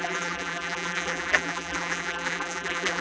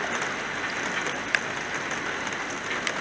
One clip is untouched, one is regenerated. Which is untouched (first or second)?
second